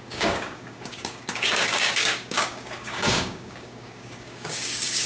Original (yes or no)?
no